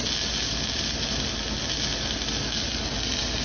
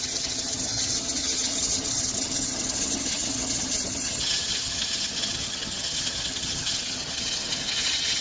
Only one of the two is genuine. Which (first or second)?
first